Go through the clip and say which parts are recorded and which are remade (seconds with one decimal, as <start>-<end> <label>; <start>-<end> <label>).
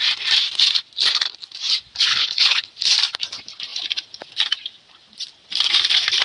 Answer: 0.0-2.1 recorded; 2.1-2.7 remade; 2.7-6.2 recorded